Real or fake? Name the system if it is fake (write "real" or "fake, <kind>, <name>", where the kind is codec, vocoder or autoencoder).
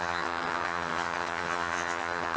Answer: fake, vocoder, HiFi-GAN